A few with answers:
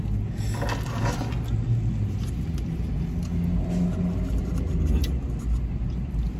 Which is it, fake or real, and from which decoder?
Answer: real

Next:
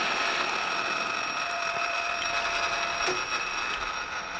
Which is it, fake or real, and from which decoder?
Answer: real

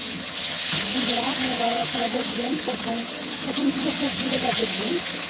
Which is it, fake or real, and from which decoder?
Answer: fake, vocoder, HiFi-GAN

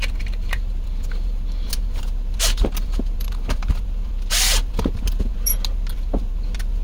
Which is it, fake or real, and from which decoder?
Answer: real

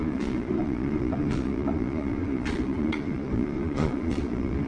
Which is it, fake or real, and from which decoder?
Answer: fake, vocoder, Vocos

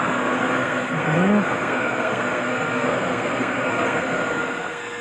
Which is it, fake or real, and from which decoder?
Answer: fake, codec, SNAC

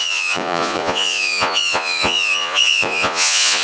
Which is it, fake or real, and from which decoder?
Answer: fake, vocoder, Vocos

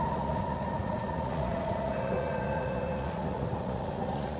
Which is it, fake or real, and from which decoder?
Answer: fake, vocoder, Vocos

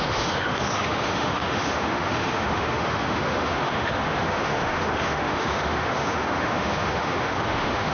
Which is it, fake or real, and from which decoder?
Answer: fake, autoencoder, DAC-VAE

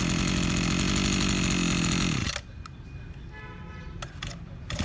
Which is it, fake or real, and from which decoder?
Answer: real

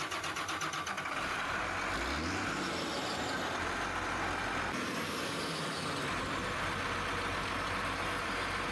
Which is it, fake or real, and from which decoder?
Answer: real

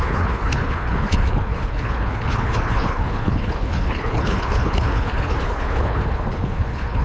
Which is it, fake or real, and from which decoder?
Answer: fake, codec, HILCodec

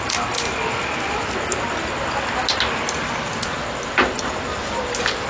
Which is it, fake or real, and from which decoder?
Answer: real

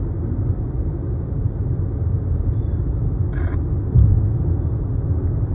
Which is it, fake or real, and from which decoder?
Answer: real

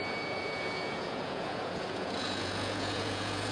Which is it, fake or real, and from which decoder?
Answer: fake, vocoder, Vocos